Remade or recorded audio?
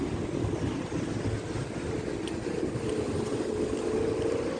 recorded